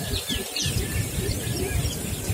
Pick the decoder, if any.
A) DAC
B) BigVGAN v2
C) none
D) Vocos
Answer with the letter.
C